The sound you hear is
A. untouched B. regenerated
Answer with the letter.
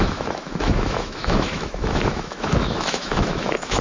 B